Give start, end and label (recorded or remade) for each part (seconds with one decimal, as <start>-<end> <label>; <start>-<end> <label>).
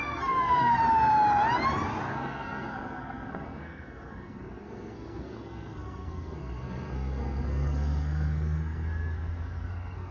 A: 0.0-0.8 remade; 0.8-2.1 recorded; 2.1-10.1 remade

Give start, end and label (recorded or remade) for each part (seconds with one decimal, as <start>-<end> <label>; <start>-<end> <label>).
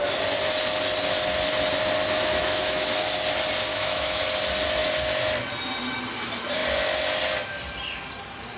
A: 0.0-2.2 recorded; 2.2-2.9 remade; 2.9-3.7 recorded; 3.7-4.2 remade; 4.2-8.6 recorded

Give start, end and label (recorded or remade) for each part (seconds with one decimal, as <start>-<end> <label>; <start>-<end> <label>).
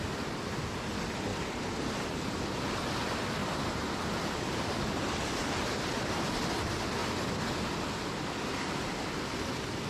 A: 0.0-1.3 recorded; 1.3-2.6 remade; 2.6-3.4 recorded; 3.4-6.2 remade; 6.2-9.9 recorded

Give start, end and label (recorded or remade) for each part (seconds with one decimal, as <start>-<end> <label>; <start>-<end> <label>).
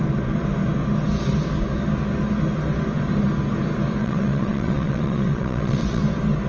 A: 0.0-4.0 recorded; 4.0-6.0 remade; 6.0-6.5 recorded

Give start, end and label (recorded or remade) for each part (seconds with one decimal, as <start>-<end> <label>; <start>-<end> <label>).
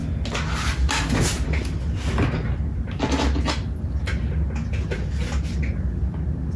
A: 0.0-6.6 recorded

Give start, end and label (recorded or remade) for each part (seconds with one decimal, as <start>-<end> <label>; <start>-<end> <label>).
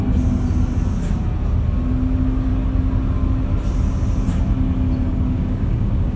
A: 0.0-5.1 recorded; 5.1-6.2 remade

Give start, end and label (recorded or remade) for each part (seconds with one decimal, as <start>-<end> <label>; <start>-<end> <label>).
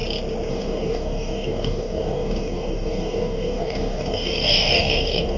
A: 0.0-0.5 recorded; 0.5-5.4 remade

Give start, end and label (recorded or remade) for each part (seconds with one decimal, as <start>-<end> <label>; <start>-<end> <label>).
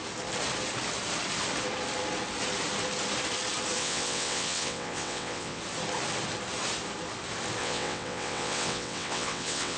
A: 0.0-3.8 recorded; 3.8-5.6 remade; 5.6-7.6 recorded; 7.6-9.8 remade